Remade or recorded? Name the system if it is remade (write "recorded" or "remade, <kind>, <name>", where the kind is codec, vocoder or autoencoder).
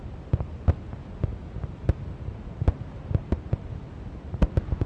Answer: recorded